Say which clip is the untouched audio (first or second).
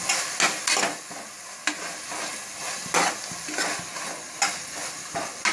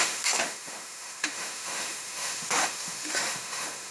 first